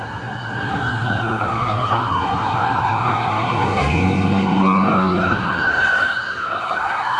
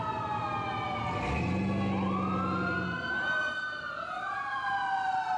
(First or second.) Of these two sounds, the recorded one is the second